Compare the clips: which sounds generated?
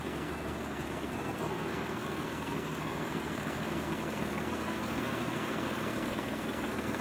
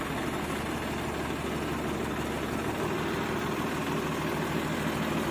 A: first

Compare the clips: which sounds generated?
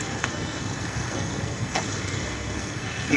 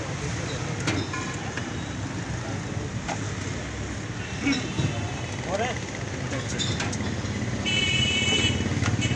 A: first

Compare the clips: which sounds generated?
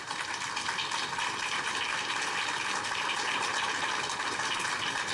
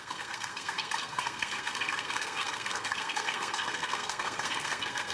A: second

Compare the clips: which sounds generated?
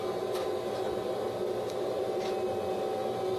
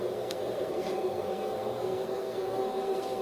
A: second